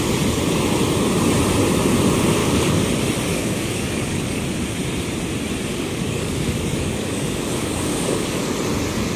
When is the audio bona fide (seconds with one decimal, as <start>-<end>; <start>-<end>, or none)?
0.0-2.4; 2.9-3.3; 4.4-5.7; 8.4-9.2